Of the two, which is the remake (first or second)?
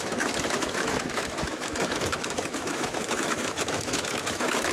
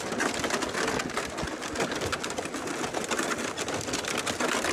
first